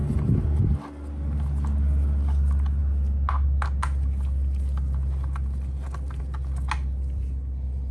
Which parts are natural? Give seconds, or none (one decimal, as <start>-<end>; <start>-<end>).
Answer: 0.6-7.9